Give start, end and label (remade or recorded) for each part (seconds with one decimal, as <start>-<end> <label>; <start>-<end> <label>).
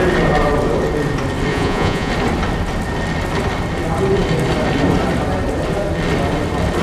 0.0-1.5 recorded; 1.5-2.1 remade; 2.1-6.8 recorded